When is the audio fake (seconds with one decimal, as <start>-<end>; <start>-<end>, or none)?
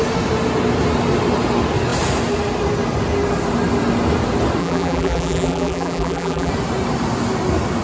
4.6-6.5